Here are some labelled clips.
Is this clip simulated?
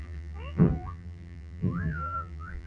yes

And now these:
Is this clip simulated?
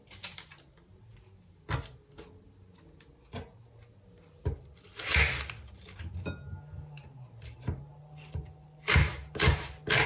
no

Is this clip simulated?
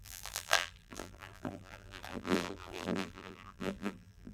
yes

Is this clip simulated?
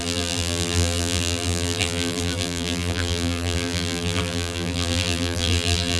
yes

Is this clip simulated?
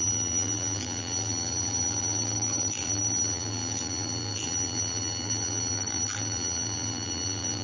yes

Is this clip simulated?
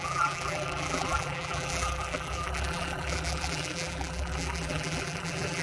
yes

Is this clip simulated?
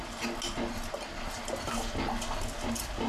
no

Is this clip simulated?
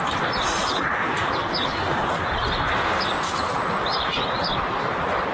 yes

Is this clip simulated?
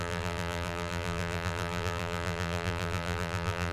yes